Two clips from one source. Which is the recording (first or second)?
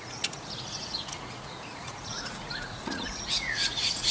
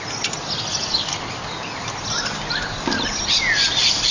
second